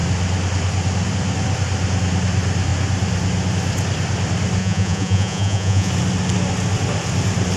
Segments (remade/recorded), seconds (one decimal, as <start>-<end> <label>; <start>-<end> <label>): 0.0-4.6 recorded; 4.6-5.9 remade; 5.9-7.6 recorded